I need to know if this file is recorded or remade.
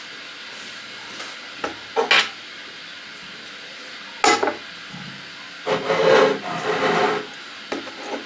recorded